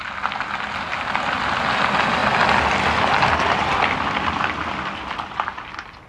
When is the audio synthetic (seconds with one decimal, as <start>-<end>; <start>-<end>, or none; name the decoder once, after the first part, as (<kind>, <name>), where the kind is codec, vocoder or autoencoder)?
none